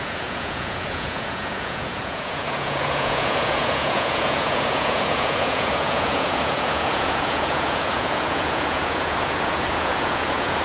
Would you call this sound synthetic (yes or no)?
yes